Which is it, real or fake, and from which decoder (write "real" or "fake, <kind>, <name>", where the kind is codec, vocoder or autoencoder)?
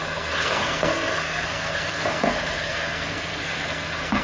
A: fake, codec, SNAC